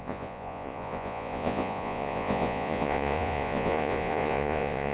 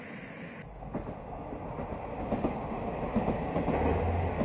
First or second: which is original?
second